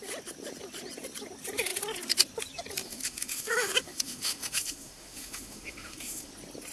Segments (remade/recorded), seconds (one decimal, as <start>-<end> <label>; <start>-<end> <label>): 0.0-2.8 recorded; 2.8-6.3 remade; 6.3-6.7 recorded